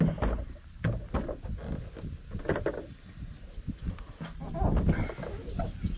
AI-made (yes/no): no